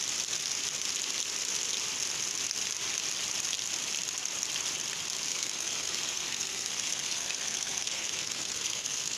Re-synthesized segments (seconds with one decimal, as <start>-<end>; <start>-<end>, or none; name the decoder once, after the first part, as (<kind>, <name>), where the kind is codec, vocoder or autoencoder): 5.3-9.2 (codec, SNAC)